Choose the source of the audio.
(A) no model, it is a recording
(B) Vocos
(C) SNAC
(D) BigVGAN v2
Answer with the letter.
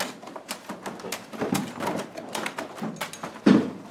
A